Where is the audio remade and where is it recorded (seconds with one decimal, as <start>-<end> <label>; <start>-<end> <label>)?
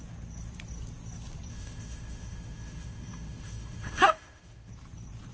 0.0-1.5 recorded; 1.5-4.7 remade; 4.7-5.3 recorded